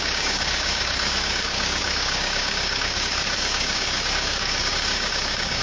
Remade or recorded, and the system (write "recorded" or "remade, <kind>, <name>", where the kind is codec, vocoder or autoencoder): remade, codec, DAC